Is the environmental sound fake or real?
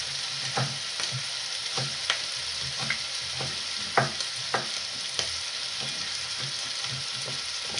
real